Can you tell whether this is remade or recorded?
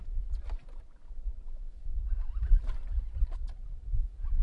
recorded